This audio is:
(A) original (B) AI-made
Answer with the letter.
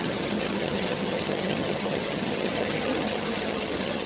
B